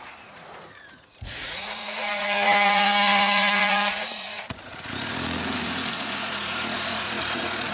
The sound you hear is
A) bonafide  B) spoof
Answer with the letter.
B